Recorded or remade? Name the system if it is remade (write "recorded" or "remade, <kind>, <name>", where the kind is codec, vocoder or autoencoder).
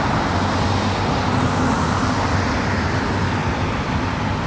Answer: recorded